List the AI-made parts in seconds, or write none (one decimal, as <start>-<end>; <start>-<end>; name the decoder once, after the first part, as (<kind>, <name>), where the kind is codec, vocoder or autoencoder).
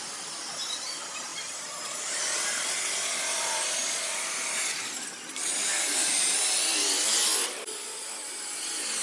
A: 1.3-6.1 (vocoder, BigVGAN v2)